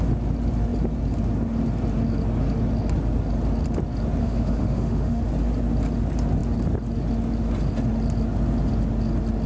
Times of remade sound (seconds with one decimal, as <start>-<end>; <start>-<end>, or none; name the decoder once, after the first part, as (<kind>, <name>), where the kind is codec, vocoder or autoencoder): 4.2-5.2 (autoencoder, DAC-VAE)